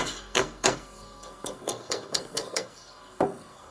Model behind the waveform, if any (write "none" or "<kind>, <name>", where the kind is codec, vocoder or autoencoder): codec, SNAC